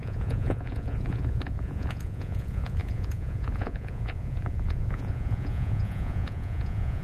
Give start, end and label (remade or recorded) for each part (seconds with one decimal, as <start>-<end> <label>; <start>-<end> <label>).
0.0-7.0 remade